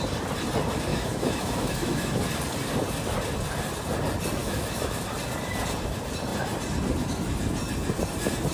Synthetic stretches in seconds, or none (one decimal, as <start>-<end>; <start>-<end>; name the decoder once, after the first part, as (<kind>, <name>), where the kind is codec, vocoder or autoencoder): 0.9-2.2 (autoencoder, DAC-VAE); 4.4-5.0